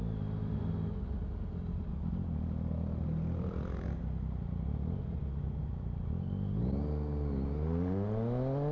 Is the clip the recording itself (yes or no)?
yes